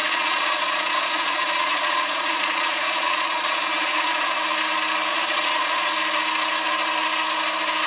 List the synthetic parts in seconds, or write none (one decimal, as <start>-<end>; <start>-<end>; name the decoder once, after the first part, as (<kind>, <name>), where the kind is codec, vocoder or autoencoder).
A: 0.0-4.4 (vocoder, Vocos); 5.1-5.9